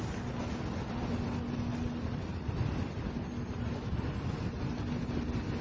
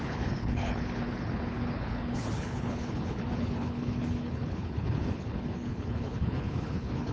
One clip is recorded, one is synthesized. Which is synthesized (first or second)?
second